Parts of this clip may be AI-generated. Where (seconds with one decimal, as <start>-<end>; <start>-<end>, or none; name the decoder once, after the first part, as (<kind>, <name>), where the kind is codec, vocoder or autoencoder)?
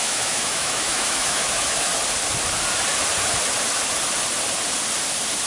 0.0-1.9 (autoencoder, DAC-VAE)